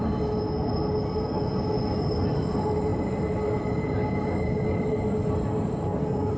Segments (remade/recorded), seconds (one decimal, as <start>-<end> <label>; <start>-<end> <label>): 0.0-6.4 recorded